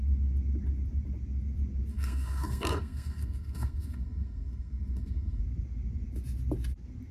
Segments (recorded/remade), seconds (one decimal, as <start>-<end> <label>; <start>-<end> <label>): 0.0-1.9 recorded; 1.9-5.4 remade; 5.4-7.1 recorded